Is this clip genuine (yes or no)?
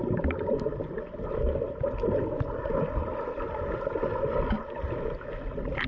yes